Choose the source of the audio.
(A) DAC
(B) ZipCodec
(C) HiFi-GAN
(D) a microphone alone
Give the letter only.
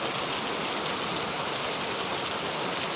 D